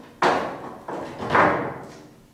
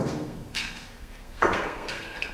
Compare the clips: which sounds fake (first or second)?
second